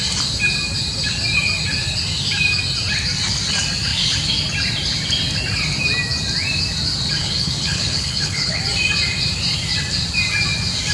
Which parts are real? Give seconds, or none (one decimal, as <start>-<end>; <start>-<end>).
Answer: 0.0-7.2; 8.6-10.9